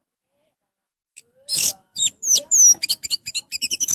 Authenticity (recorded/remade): remade